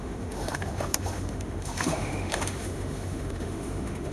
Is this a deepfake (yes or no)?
yes